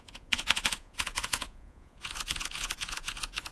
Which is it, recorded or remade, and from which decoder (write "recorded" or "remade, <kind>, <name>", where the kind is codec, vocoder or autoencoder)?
remade, vocoder, Vocos